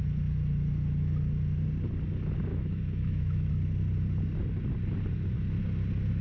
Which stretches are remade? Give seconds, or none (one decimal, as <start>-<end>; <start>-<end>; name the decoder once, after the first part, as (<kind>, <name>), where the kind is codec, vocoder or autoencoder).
2.5-3.5 (autoencoder, DAC-VAE)